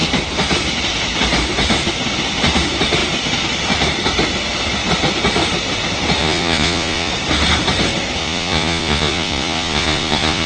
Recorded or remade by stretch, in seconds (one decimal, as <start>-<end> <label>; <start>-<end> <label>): 0.0-6.2 recorded; 6.2-7.1 remade; 7.1-8.2 recorded; 8.2-10.5 remade